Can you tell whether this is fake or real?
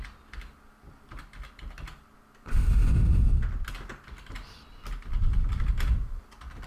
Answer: real